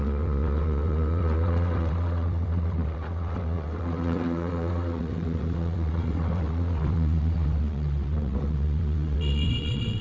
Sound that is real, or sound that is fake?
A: fake